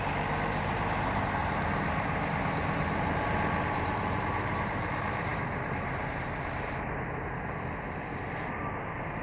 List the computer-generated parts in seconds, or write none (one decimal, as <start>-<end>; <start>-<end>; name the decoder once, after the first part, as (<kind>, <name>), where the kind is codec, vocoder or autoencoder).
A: 1.4-2.8 (vocoder, BigVGAN v2)